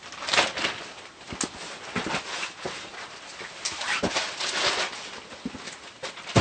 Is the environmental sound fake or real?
real